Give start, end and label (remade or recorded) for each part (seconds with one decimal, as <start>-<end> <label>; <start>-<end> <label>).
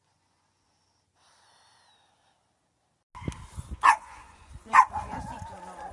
0.0-0.8 remade; 0.8-3.6 recorded; 3.6-5.9 remade